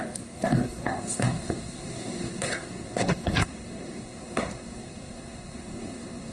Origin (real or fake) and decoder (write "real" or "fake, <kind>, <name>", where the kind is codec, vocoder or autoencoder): fake, codec, SNAC